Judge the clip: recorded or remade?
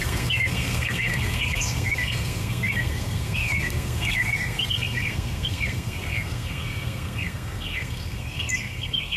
remade